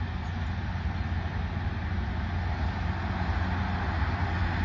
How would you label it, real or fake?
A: real